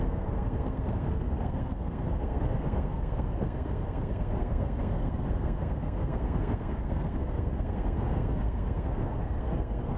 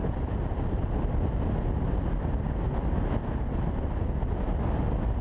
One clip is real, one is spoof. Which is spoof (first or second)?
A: first